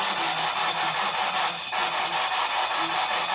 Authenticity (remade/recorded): recorded